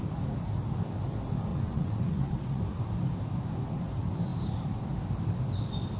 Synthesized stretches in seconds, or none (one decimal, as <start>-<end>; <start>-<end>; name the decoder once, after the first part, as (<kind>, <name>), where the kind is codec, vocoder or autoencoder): 1.5-2.6 (vocoder, WaveNeXt)

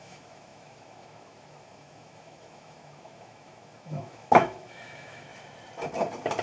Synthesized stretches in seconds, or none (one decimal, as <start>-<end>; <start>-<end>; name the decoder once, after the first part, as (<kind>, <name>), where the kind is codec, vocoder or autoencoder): 0.0-5.3 (autoencoder, DAC-VAE)